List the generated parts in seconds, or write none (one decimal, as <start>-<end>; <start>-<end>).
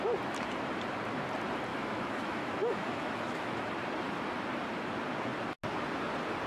1.7-3.6